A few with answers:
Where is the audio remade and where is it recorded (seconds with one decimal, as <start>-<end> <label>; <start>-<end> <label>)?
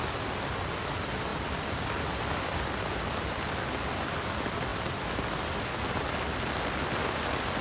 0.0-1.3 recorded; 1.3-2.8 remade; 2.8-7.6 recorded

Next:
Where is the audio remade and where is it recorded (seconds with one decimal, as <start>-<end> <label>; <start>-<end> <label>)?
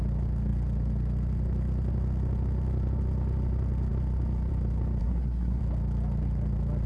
0.0-5.0 recorded; 5.0-5.6 remade; 5.6-6.9 recorded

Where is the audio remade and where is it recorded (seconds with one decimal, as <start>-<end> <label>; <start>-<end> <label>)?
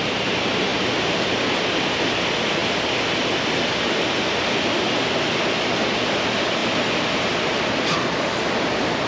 0.0-9.1 recorded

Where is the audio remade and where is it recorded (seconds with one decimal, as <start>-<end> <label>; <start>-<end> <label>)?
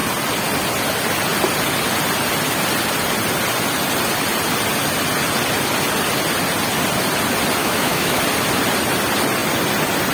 0.0-7.6 recorded; 7.6-8.2 remade; 8.2-10.1 recorded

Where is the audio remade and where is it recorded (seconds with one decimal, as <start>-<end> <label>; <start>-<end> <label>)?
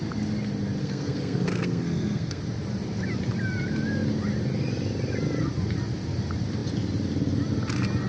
0.0-0.8 recorded; 0.8-2.4 remade; 2.4-8.1 recorded